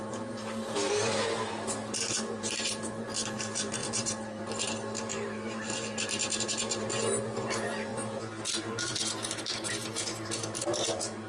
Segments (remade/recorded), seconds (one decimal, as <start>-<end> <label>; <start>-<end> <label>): 0.0-7.9 remade; 7.9-8.6 recorded; 8.6-11.3 remade